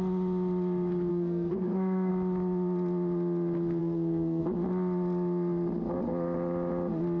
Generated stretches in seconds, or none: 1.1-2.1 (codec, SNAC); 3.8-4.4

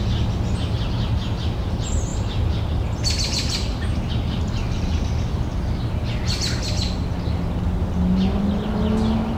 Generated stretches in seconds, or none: none